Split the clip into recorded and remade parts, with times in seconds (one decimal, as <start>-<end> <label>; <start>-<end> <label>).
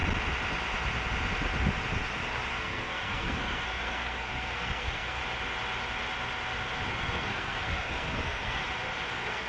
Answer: 0.0-2.5 recorded; 2.5-5.2 remade; 5.2-6.9 recorded; 6.9-8.6 remade; 8.6-9.1 recorded; 9.1-9.5 remade